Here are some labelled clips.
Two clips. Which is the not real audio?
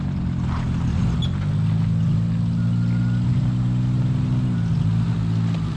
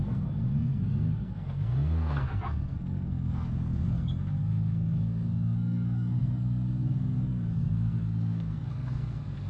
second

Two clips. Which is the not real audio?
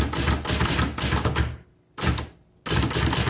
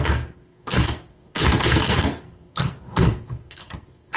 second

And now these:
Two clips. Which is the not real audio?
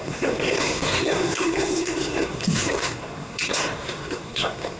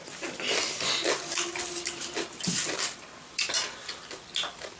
first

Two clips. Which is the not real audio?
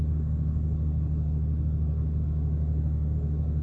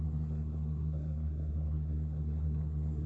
second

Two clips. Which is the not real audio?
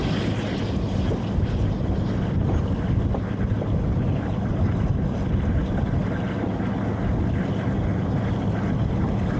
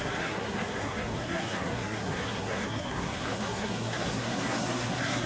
second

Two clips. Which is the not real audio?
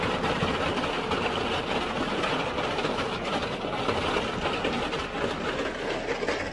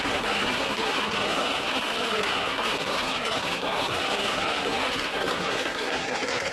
second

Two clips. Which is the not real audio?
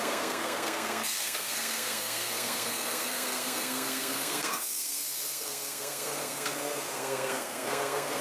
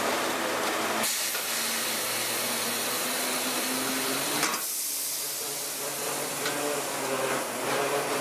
first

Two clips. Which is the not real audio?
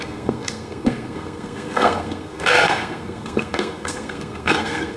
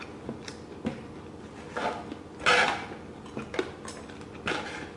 first